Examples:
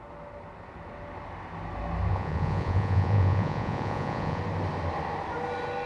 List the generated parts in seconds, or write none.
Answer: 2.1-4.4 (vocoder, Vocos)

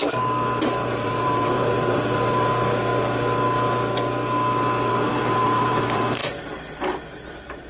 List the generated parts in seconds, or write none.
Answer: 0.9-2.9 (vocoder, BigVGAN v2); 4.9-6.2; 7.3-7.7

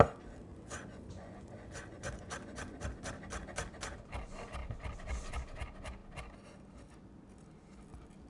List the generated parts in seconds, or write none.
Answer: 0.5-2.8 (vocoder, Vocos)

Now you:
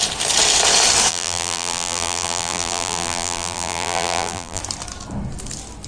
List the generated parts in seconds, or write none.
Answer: 1.1-4.6 (vocoder, BigVGAN v2)

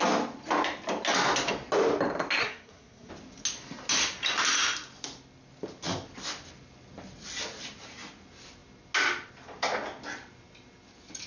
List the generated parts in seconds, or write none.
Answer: 2.4-3.1 (codec, SNAC)